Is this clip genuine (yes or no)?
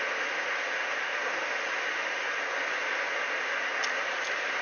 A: yes